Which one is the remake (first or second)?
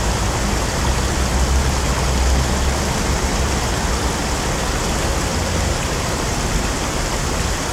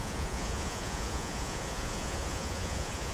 second